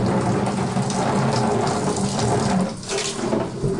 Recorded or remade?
recorded